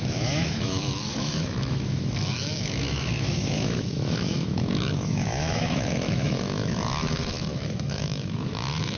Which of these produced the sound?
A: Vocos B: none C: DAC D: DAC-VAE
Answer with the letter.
D